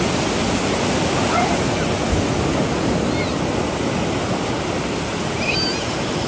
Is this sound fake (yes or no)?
no